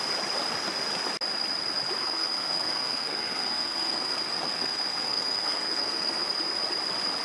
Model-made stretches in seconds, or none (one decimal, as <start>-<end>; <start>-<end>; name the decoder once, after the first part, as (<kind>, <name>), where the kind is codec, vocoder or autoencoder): 2.0-6.2 (codec, SNAC)